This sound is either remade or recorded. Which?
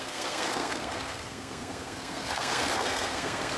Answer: remade